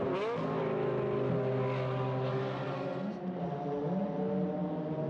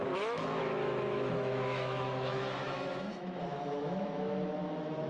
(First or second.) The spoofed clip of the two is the second